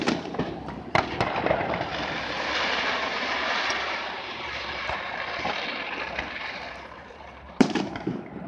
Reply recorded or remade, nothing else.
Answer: remade